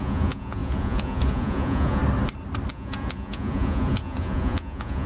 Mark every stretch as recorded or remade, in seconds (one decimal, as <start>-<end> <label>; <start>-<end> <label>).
0.0-2.0 remade; 2.0-2.7 recorded; 2.7-5.1 remade